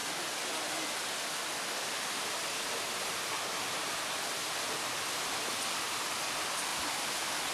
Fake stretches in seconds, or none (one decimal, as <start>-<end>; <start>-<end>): none